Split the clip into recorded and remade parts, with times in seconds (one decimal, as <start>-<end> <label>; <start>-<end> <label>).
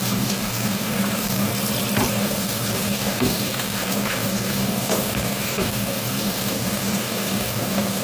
0.0-1.5 remade; 1.5-2.1 recorded; 2.1-8.0 remade